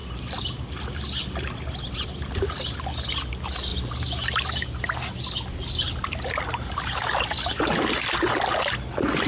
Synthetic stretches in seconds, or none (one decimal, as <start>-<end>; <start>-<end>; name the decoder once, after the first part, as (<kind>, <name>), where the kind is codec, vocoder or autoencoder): none